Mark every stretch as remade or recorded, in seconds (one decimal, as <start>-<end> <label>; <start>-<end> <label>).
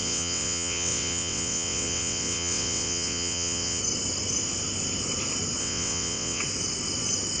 0.0-3.8 remade; 3.8-5.6 recorded; 5.6-6.4 remade; 6.4-7.4 recorded